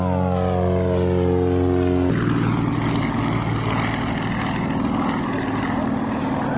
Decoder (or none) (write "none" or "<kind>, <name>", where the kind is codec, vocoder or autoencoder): none